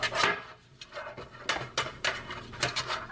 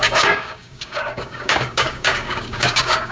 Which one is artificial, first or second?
second